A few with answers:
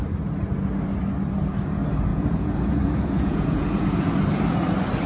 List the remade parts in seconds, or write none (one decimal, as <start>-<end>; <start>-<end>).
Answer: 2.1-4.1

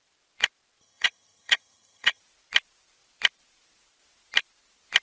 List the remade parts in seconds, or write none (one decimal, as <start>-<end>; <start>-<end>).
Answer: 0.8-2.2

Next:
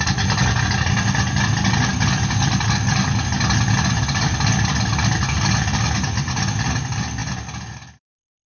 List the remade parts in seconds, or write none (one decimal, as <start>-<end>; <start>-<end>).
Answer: none

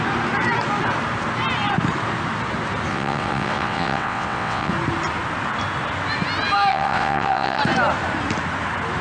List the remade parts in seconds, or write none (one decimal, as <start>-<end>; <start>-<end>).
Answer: 2.9-4.7; 6.7-7.6